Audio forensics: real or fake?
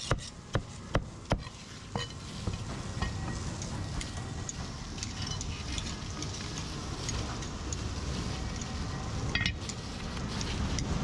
real